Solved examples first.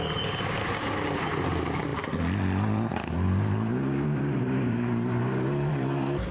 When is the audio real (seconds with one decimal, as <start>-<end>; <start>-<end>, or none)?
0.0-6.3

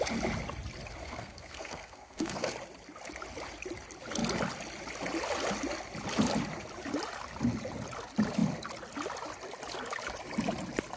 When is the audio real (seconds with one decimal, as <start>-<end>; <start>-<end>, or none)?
0.0-1.0; 2.5-11.0

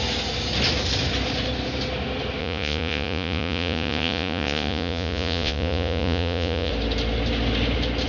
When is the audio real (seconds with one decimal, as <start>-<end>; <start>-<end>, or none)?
0.0-2.4; 6.7-8.1

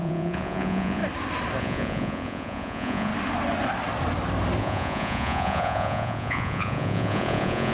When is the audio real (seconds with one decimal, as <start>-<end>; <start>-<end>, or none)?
1.0-1.6; 3.1-4.6